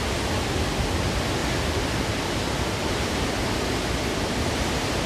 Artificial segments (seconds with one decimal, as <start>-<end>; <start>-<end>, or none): 1.4-3.5